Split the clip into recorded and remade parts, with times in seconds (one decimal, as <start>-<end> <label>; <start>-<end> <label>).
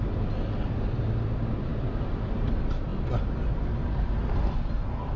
0.0-5.2 recorded